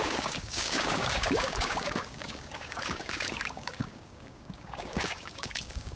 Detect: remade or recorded remade